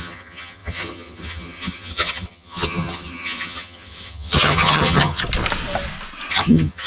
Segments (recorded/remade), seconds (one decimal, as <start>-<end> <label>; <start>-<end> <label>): 0.0-5.2 remade; 5.2-6.3 recorded; 6.3-6.9 remade